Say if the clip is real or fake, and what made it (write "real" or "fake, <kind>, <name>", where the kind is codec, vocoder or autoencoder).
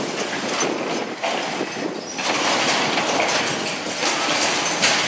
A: real